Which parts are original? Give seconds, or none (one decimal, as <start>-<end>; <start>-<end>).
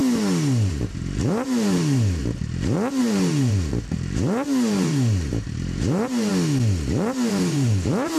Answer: 0.0-0.7; 2.2-3.0; 6.3-7.3